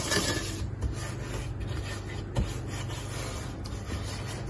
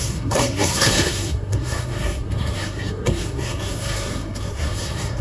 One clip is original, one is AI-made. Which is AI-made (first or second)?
second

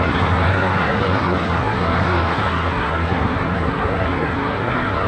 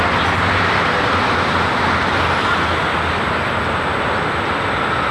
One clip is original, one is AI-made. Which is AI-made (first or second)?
first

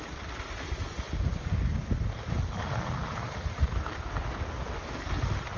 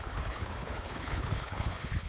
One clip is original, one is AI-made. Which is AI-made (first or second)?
second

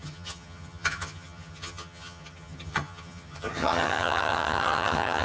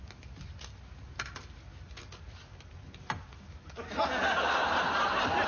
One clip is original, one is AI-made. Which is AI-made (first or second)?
first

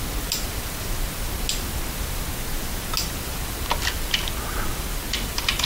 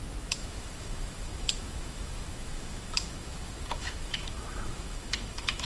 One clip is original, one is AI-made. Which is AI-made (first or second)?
second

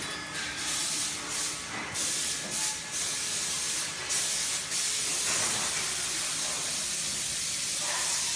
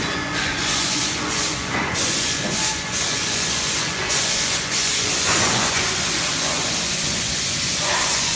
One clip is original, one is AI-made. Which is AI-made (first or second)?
second